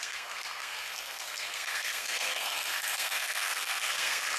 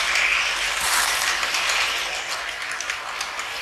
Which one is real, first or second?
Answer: second